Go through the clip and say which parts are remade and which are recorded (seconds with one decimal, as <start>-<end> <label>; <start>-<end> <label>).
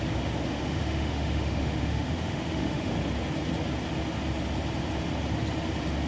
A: 0.0-0.5 recorded; 0.5-2.9 remade; 2.9-6.1 recorded